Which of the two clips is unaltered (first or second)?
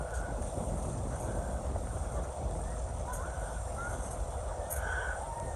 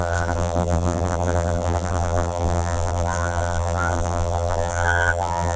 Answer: first